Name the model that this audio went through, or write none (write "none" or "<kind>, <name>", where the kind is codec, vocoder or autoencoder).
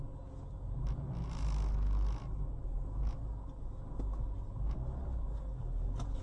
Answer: none